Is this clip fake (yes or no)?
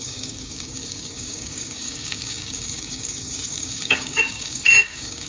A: yes